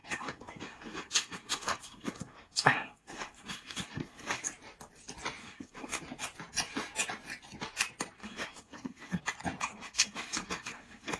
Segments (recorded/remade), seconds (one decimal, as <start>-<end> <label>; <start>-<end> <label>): 0.0-4.4 remade; 4.4-5.4 recorded; 5.4-6.0 remade; 6.0-8.2 recorded; 8.2-9.2 remade; 9.2-9.7 recorded; 9.7-11.2 remade